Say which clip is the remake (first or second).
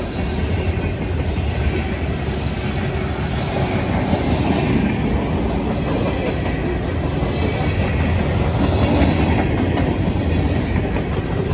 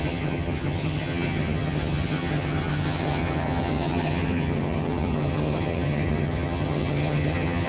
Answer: second